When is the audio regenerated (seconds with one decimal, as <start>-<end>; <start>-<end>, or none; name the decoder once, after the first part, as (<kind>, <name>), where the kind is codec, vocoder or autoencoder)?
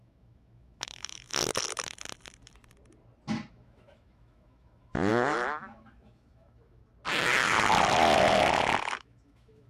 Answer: 0.0-1.3 (autoencoder, DAC-VAE); 3.5-6.8; 8.8-9.7